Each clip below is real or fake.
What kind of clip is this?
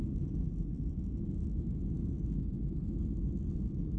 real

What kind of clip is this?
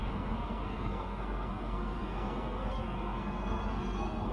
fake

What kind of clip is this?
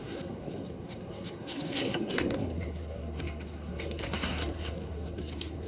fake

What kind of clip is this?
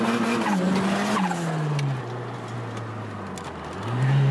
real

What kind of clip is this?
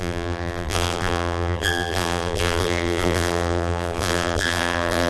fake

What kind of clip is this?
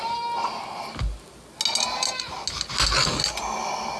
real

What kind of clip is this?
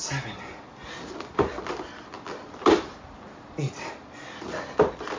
real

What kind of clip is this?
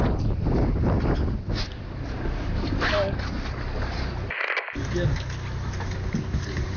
real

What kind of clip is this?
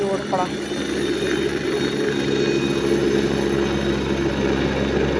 real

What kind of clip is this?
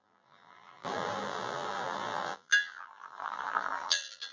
fake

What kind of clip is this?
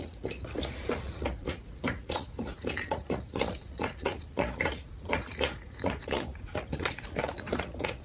fake